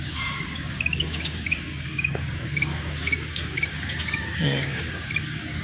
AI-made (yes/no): yes